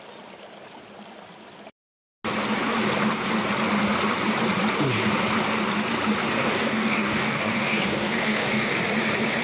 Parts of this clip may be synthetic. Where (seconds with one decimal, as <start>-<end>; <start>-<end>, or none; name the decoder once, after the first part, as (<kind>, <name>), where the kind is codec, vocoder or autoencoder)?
6.4-8.8 (codec, DAC)